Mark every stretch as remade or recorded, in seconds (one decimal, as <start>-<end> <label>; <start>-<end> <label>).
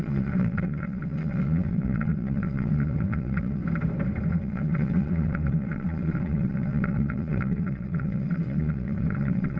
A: 0.0-3.6 remade; 3.6-4.3 recorded; 4.3-9.6 remade